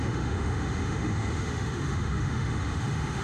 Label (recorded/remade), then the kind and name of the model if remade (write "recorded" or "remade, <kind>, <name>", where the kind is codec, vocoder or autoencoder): remade, autoencoder, DAC-VAE